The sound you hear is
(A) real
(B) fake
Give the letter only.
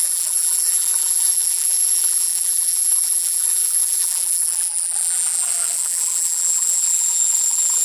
B